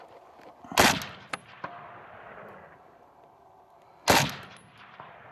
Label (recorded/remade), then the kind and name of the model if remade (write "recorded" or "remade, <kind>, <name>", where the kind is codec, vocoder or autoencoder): recorded